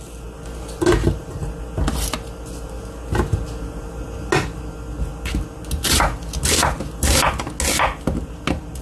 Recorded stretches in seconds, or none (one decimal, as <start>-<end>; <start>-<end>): 0.0-8.8